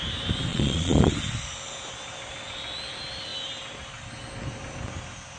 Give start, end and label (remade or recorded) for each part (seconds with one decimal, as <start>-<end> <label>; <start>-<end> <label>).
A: 0.0-0.5 recorded; 0.5-1.1 remade; 1.1-5.4 recorded